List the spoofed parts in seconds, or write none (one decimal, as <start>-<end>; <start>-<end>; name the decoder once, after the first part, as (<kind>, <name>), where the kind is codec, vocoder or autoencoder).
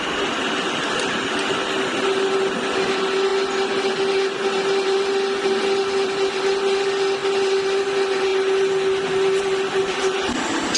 none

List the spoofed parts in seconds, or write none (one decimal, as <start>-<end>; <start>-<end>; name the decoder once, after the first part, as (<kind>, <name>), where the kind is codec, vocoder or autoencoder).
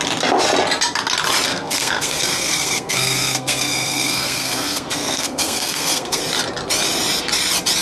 1.5-6.2 (codec, SNAC)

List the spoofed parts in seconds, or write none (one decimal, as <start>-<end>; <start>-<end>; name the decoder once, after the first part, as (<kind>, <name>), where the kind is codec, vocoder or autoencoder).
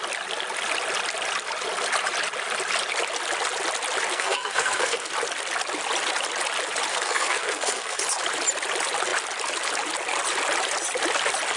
4.1-5.1 (codec, SNAC); 6.9-8.0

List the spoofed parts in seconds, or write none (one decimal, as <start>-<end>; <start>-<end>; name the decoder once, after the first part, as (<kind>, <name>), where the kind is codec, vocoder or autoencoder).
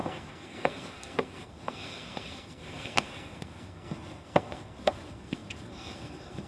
0.0-6.5 (codec, SNAC)